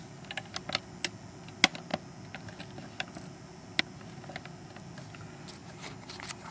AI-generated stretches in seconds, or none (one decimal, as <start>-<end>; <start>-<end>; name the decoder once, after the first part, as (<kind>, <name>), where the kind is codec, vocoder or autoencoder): 5.6-6.5 (vocoder, BigVGAN v2)